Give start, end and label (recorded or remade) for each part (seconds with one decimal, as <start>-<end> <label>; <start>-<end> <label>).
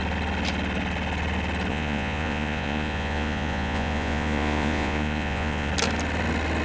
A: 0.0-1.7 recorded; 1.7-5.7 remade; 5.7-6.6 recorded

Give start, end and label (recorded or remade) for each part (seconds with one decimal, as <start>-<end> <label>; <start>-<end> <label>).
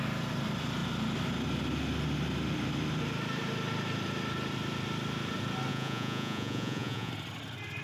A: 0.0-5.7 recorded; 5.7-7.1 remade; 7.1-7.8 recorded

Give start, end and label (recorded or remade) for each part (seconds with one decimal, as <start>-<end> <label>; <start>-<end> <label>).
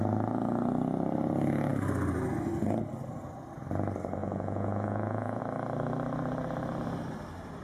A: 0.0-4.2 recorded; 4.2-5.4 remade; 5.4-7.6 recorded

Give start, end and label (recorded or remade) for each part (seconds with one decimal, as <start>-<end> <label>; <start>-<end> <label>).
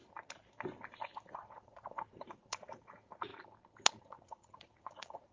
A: 0.0-1.3 recorded; 1.3-3.3 remade; 3.3-4.0 recorded; 4.0-5.3 remade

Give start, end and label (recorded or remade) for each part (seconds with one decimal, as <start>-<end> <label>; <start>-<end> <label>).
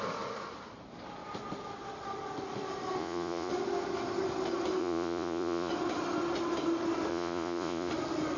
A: 0.0-3.0 recorded; 3.0-3.5 remade; 3.5-4.8 recorded; 4.8-5.7 remade; 5.7-7.1 recorded; 7.1-7.9 remade; 7.9-8.4 recorded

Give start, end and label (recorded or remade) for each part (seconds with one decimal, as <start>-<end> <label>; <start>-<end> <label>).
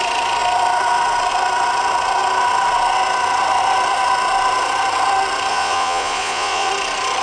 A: 0.0-5.5 recorded; 5.5-6.7 remade; 6.7-7.2 recorded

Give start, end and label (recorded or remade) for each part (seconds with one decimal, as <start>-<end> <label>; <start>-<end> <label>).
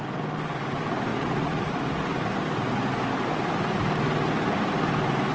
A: 0.0-1.1 recorded; 1.1-1.7 remade; 1.7-5.3 recorded